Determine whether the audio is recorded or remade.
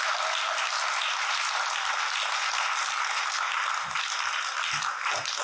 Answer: recorded